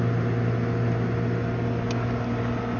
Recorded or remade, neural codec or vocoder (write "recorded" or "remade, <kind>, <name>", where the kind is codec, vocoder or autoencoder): recorded